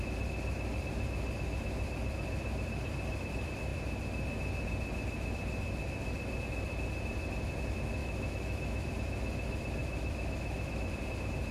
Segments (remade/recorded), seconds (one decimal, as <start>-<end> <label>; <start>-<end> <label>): 0.0-8.0 recorded; 8.0-8.9 remade; 8.9-9.8 recorded; 9.8-10.9 remade; 10.9-11.5 recorded